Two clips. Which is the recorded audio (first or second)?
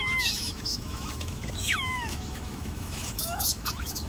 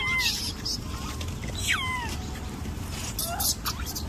second